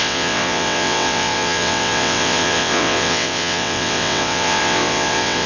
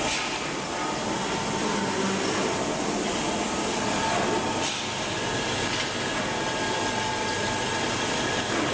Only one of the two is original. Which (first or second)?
second